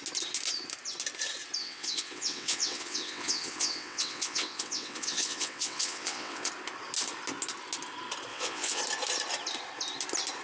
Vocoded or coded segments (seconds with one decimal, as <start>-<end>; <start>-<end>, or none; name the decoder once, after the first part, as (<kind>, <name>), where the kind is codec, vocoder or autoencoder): 1.6-6.5 (vocoder, WaveNeXt); 8.3-8.8